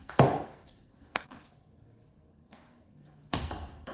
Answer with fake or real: fake